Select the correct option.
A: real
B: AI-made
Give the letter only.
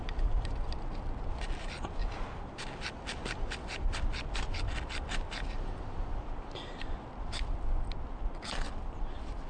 A